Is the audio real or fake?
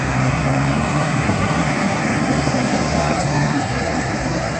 fake